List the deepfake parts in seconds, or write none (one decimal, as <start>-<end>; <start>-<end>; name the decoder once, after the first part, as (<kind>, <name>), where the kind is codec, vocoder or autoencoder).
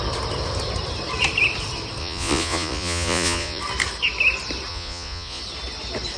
2.0-3.6 (vocoder, Vocos); 4.7-5.4